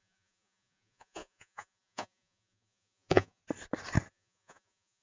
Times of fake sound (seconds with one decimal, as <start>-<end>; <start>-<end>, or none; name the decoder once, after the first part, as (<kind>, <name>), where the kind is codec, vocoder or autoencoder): 0.0-3.4 (vocoder, Vocos); 4.1-5.0

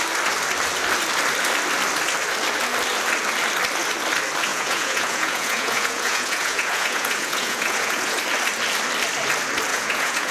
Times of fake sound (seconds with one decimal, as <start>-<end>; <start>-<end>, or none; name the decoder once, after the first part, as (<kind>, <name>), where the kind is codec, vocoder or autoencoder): 4.5-8.2 (vocoder, Vocos); 9.7-10.3